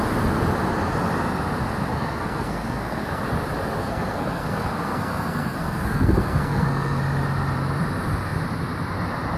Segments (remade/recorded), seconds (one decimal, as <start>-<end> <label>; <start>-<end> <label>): 0.0-1.9 recorded; 1.9-3.2 remade; 3.2-3.8 recorded; 3.8-7.0 remade; 7.0-9.4 recorded